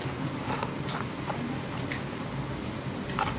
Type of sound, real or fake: real